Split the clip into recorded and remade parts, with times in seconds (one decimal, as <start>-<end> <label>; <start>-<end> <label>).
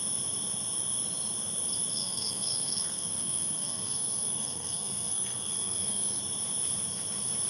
0.0-1.9 recorded; 1.9-6.2 remade; 6.2-7.5 recorded